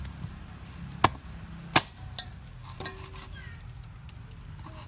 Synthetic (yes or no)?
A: no